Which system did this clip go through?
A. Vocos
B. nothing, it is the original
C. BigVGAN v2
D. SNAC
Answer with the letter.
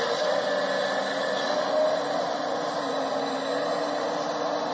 B